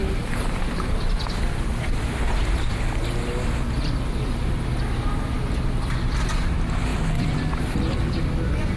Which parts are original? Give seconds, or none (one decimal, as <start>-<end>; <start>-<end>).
0.0-6.9; 7.6-8.8